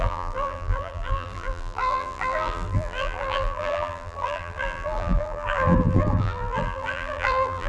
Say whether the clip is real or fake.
fake